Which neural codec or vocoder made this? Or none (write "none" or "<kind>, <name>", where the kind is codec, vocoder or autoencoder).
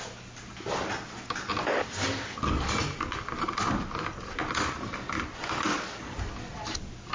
none